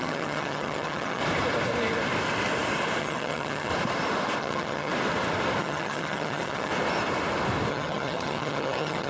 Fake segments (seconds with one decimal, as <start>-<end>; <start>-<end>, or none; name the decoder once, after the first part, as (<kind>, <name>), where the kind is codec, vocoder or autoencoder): 0.0-1.2 (vocoder, HiFi-GAN); 3.0-3.7; 4.4-4.9; 5.6-6.7; 7.7-9.1

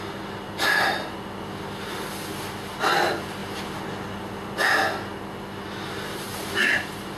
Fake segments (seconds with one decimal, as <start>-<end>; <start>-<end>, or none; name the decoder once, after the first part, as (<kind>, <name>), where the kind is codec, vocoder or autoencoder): none

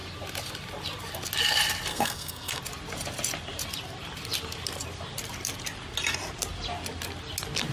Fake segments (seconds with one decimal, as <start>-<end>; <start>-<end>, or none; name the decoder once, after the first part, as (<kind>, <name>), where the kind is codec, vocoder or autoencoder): 1.9-2.6 (codec, SNAC)

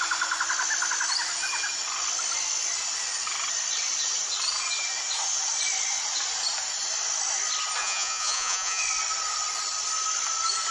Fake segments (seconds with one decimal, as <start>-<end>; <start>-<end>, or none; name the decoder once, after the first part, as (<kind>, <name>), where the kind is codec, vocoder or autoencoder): 7.8-8.8 (vocoder, Vocos)